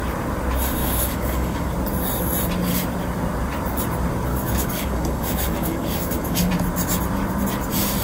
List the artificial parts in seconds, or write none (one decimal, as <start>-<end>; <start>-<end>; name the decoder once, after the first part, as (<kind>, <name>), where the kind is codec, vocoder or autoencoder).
0.8-1.7 (codec, DAC); 4.3-6.5